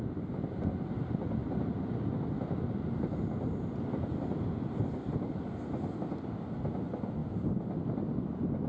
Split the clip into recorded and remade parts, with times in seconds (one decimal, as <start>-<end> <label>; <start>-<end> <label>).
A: 0.0-8.7 recorded